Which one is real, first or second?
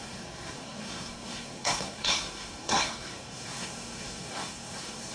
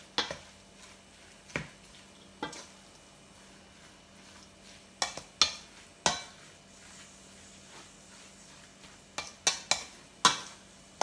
second